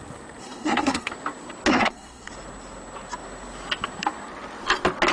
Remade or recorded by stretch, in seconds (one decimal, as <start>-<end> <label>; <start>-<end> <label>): 0.0-0.4 recorded; 0.4-1.1 remade; 1.1-1.7 recorded; 1.7-2.3 remade; 2.3-5.1 recorded

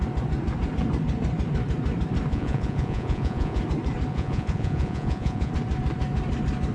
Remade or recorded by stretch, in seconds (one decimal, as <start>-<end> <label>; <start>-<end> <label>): 0.0-2.3 recorded; 2.3-3.6 remade; 3.6-4.1 recorded; 4.1-5.5 remade; 5.5-6.7 recorded

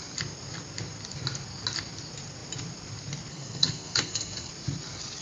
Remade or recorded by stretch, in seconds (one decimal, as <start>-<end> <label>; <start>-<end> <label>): 0.0-3.3 recorded; 3.3-4.5 remade; 4.5-5.2 recorded

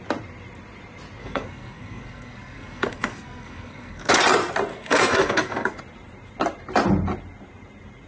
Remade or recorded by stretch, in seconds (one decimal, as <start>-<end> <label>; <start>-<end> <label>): 0.0-1.2 recorded; 1.2-4.1 remade; 4.1-4.7 recorded; 4.7-5.8 remade; 5.8-8.1 recorded

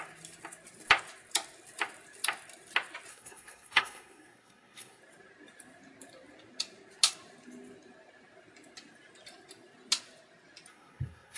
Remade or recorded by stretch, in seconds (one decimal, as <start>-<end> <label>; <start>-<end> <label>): 0.0-3.1 recorded; 3.1-5.0 remade; 5.0-10.7 recorded; 10.7-11.4 remade

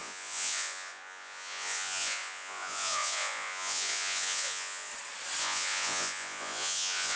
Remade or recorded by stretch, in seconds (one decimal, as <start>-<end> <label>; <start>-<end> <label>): 0.0-4.9 remade; 4.9-5.4 recorded; 5.4-7.2 remade

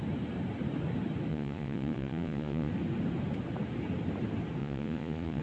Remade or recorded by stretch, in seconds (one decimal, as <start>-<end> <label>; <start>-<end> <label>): 0.0-1.3 recorded; 1.3-2.7 remade; 2.7-4.6 recorded; 4.6-5.4 remade

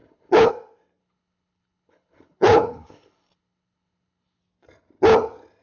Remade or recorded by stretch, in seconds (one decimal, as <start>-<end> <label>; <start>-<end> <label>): 0.0-0.5 remade; 0.5-1.0 recorded; 1.0-4.4 remade; 4.4-5.6 recorded